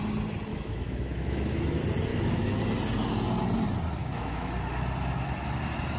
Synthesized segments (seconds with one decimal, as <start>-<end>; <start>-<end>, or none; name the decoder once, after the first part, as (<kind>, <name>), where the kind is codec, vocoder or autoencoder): 0.5-1.6 (autoencoder, DAC-VAE); 2.1-2.6; 4.0-4.5